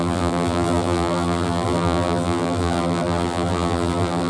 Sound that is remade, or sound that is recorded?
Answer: remade